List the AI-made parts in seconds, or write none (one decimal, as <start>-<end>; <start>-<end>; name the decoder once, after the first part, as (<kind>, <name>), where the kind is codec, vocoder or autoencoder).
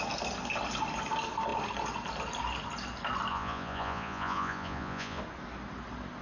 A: 3.3-5.2 (vocoder, Vocos)